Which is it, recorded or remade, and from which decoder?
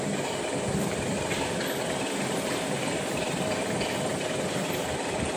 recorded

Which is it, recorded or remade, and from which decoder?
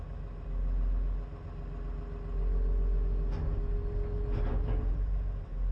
recorded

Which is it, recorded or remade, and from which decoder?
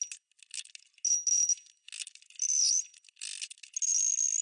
recorded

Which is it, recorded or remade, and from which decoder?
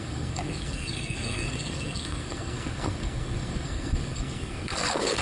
remade, codec, SNAC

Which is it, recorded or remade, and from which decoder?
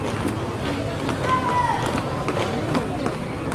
recorded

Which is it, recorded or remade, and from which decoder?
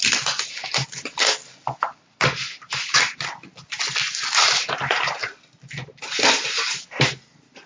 recorded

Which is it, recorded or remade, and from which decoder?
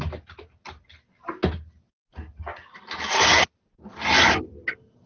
recorded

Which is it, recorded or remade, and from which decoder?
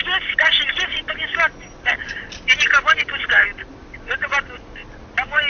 recorded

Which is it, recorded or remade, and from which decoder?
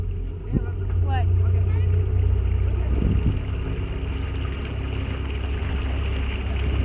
recorded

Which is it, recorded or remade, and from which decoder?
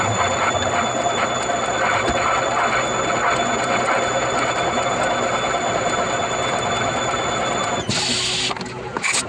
recorded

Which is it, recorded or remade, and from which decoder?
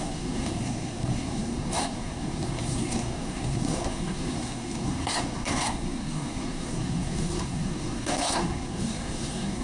remade, codec, SNAC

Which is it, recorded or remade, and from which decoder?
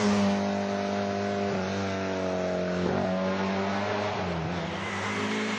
recorded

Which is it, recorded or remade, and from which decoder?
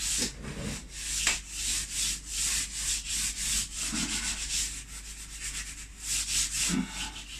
recorded